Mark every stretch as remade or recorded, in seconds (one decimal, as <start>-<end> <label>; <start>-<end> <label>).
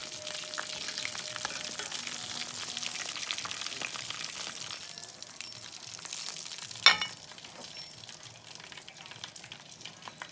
0.0-10.3 recorded